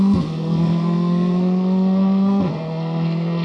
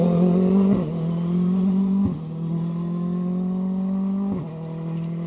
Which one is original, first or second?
second